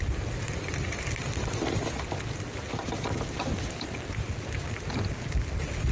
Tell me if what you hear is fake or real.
real